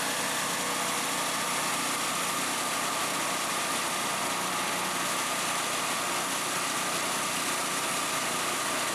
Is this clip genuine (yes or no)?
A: yes